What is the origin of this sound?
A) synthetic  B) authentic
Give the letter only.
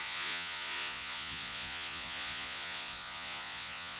A